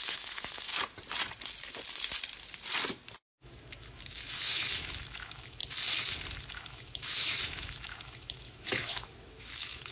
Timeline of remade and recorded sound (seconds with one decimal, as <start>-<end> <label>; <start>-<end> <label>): 0.0-0.7 remade; 0.7-3.3 recorded; 3.3-5.6 remade; 5.6-6.5 recorded; 6.5-9.9 remade